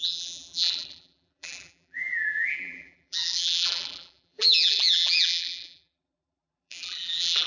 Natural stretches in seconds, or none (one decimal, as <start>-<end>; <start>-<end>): none